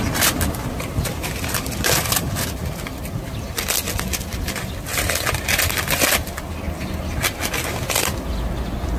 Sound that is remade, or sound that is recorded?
recorded